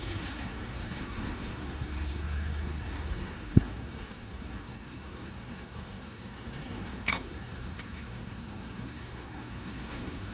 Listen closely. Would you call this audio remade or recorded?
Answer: remade